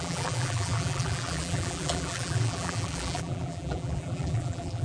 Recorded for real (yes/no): no